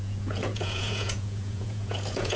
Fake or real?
fake